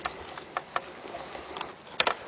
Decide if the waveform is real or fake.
real